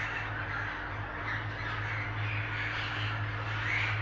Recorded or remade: recorded